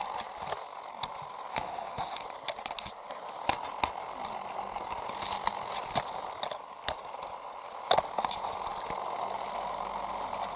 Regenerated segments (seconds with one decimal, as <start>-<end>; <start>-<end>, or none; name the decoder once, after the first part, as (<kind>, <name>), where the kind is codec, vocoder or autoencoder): 1.5-2.2 (autoencoder, DAC-VAE)